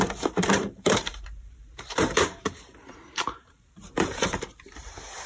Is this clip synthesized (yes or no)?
yes